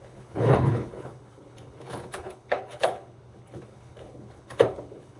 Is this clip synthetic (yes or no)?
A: yes